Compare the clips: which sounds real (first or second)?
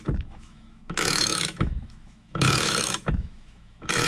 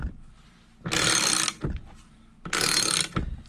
second